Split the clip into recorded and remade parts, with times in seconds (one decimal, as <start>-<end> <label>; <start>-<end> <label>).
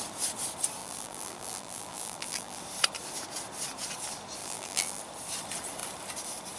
0.0-0.8 recorded; 0.8-2.6 remade; 2.6-4.4 recorded; 4.4-5.0 remade; 5.0-6.6 recorded